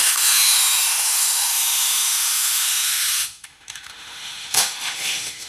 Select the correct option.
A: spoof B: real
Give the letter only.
A